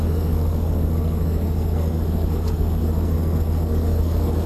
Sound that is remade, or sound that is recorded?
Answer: remade